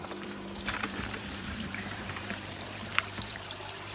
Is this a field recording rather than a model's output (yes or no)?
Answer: no